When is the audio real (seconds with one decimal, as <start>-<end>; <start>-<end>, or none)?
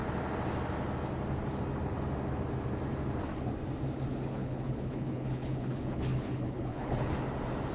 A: 0.0-4.1; 7.1-7.7